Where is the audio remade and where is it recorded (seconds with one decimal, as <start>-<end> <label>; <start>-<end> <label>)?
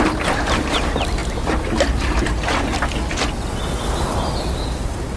0.0-5.2 recorded